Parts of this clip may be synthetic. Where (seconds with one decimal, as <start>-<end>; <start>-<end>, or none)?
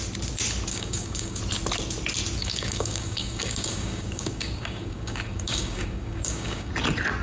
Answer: 0.7-1.4; 2.4-6.7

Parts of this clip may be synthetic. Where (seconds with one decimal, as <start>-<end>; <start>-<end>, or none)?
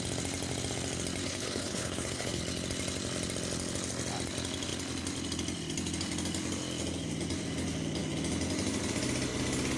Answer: 1.2-2.4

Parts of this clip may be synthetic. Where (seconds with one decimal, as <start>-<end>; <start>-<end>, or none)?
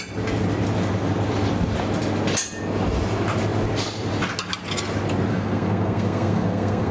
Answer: 5.3-6.9